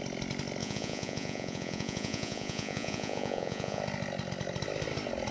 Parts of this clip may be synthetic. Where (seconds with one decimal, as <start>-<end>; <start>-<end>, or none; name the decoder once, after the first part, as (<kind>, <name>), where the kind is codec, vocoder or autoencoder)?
0.6-3.8 (vocoder, Vocos)